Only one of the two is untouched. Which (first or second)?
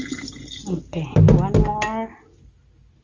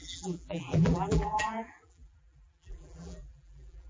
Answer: first